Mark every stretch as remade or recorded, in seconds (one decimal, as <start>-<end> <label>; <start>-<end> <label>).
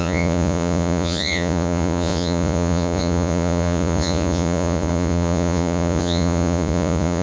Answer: 0.0-7.2 remade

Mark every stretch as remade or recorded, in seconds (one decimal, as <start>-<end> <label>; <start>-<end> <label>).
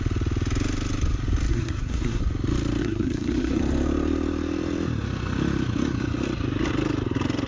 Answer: 0.0-1.5 recorded; 1.5-2.2 remade; 2.2-2.8 recorded; 2.8-3.6 remade; 3.6-7.5 recorded